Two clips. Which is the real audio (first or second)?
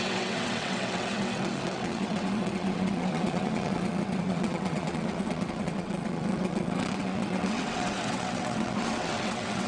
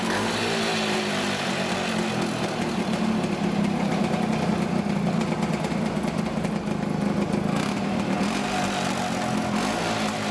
second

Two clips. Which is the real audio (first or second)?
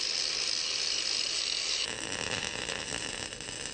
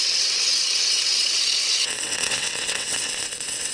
first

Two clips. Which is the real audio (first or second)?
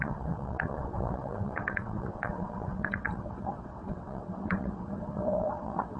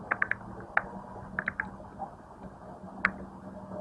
second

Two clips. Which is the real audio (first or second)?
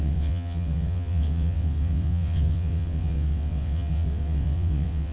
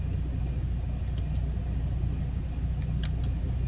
second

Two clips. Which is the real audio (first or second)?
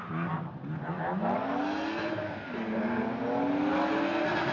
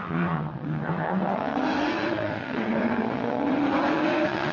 first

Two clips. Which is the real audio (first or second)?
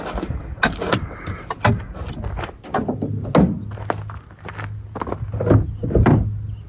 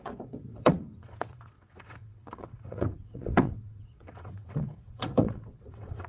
first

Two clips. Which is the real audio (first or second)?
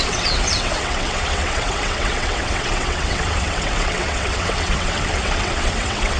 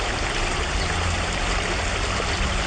second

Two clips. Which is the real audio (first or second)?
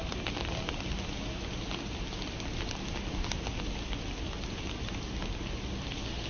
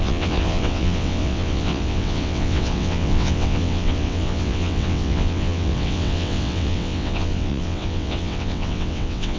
first